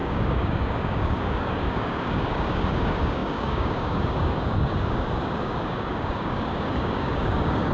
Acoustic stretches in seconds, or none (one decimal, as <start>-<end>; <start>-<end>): none